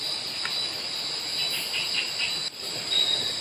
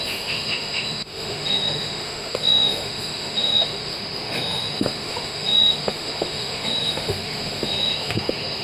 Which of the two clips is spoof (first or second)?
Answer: second